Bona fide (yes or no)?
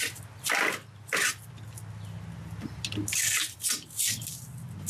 yes